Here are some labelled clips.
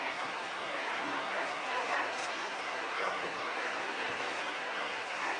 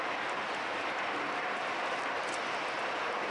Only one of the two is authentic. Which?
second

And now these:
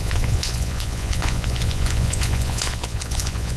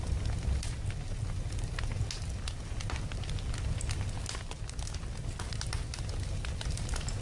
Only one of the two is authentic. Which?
second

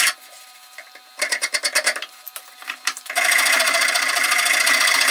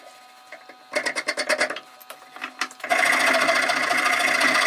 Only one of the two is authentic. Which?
second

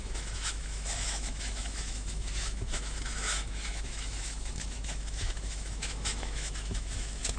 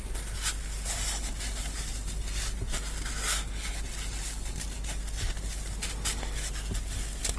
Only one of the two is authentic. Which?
second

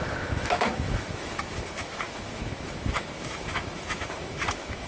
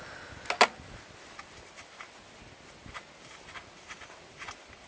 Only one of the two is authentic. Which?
second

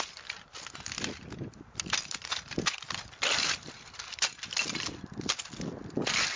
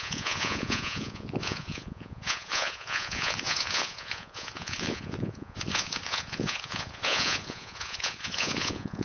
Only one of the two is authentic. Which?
first